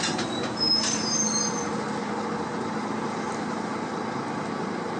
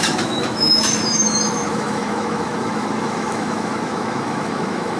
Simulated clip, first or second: second